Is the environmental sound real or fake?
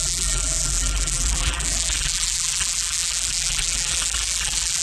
fake